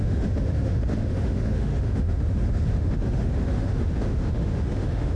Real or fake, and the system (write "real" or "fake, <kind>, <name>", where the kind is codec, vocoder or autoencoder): fake, autoencoder, DAC-VAE